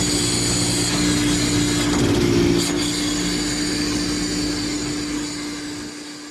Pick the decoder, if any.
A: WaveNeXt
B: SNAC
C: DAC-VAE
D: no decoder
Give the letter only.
D